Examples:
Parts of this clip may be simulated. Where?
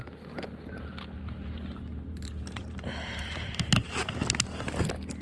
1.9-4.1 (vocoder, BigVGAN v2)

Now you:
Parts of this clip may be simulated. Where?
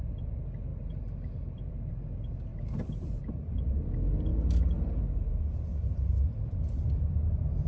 0.7-1.9 (vocoder, BigVGAN v2); 2.5-3.2; 4.3-5.0; 5.7-6.4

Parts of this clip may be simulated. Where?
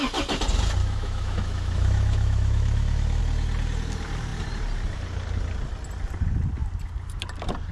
0.8-3.2 (autoencoder, DAC-VAE)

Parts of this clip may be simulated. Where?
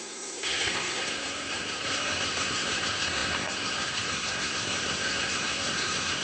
0.0-6.2 (codec, SNAC)